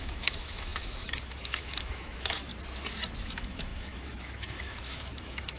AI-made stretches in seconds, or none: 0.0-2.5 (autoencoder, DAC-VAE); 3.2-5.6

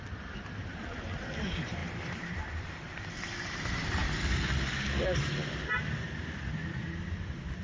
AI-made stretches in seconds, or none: none

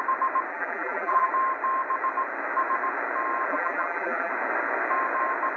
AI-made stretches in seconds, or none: 0.5-1.3 (vocoder, BigVGAN v2); 3.5-4.3

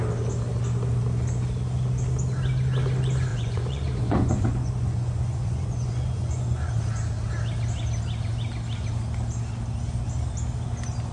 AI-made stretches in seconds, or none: 3.3-6.7 (vocoder, Vocos)

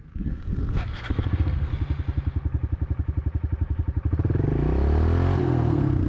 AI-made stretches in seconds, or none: 0.0-1.7 (codec, SNAC); 5.4-6.1

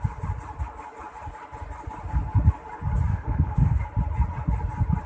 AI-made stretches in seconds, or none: 3.1-3.8 (autoencoder, DAC-VAE)

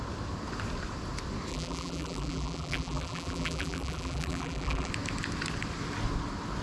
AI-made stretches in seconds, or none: 1.5-4.9 (vocoder, BigVGAN v2)

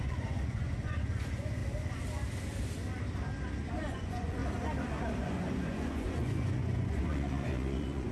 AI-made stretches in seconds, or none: 0.0-1.6 (vocoder, Vocos); 3.7-4.4; 5.2-8.1